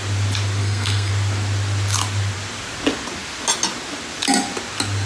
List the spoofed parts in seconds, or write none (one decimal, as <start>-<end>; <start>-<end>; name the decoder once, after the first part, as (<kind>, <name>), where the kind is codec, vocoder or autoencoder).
0.6-1.1 (codec, SNAC)